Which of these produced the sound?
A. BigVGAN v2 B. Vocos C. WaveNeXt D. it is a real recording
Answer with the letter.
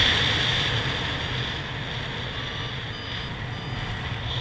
D